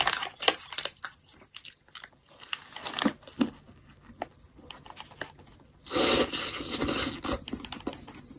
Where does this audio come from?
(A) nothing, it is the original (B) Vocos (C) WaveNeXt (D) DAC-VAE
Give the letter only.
A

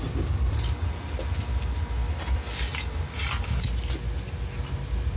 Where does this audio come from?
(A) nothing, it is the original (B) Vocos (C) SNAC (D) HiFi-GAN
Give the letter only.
A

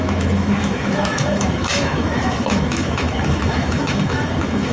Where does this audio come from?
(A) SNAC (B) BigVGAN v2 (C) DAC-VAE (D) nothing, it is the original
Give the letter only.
C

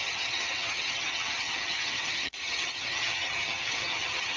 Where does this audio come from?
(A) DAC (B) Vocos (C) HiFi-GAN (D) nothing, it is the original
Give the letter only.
C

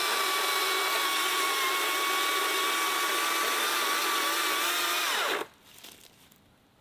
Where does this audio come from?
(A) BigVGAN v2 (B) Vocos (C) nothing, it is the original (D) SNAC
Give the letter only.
C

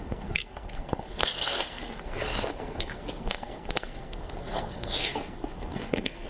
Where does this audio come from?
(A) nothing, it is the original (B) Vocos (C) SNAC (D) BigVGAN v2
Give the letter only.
C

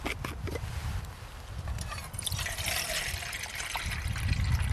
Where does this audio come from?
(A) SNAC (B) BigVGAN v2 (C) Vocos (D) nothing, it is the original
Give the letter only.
D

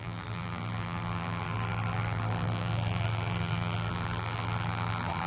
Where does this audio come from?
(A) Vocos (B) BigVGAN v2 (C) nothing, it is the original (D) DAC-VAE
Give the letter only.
B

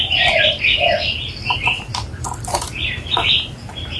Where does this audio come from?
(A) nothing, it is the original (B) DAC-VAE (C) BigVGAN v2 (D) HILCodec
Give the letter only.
C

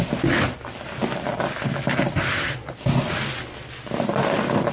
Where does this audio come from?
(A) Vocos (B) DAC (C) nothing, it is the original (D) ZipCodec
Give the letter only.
C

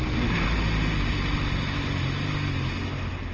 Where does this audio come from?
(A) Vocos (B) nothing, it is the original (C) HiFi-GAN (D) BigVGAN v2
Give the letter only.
B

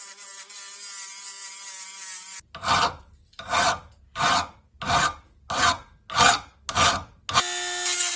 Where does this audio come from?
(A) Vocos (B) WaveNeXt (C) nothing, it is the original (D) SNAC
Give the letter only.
C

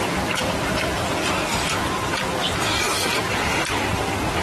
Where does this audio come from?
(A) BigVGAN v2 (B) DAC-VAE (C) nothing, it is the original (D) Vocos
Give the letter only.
A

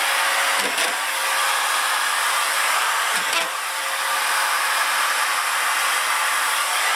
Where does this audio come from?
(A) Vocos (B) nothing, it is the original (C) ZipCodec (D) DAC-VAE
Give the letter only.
B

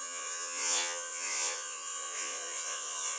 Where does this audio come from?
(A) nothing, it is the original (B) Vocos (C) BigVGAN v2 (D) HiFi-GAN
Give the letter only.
B